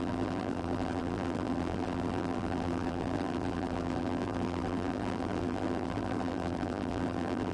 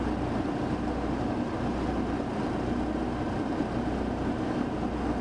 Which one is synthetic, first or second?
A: first